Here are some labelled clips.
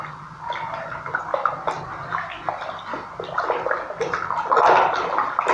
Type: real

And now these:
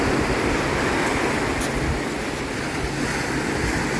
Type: real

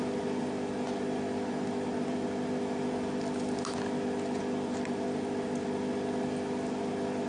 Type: real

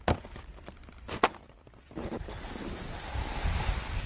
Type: real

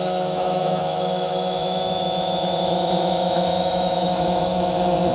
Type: fake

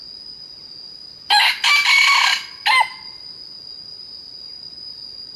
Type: real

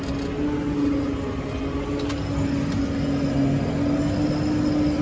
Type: real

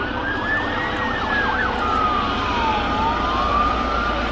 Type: real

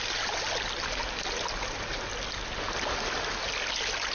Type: real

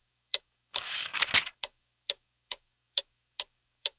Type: fake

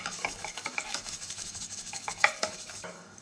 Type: fake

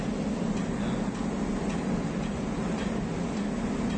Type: real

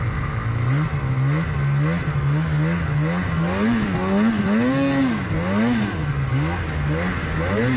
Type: real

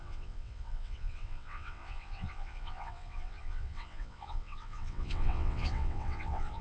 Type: fake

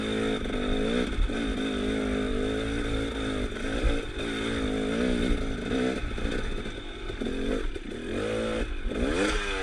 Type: real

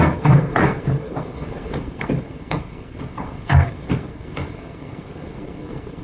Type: fake